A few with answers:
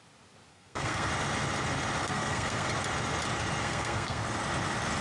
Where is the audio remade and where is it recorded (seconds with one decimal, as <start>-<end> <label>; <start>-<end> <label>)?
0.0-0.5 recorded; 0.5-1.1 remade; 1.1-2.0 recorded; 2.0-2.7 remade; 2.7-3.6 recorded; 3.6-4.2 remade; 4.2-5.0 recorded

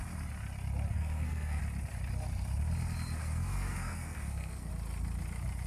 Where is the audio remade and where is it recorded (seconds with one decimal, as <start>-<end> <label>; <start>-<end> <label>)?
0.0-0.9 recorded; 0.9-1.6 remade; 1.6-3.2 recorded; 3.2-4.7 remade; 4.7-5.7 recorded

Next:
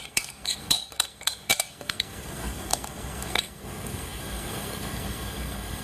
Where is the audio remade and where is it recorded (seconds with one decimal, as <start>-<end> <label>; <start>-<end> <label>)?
0.0-5.8 remade

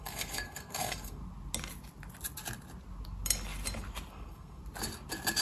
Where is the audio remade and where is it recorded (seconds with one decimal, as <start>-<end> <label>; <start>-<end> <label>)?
0.0-1.2 remade; 1.2-4.1 recorded; 4.1-4.6 remade; 4.6-5.4 recorded

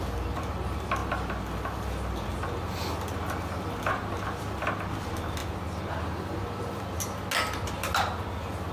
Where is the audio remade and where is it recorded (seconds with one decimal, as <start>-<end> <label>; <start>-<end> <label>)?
0.0-8.7 recorded